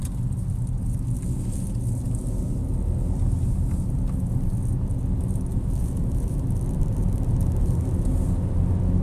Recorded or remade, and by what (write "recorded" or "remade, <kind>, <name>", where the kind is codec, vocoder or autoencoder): recorded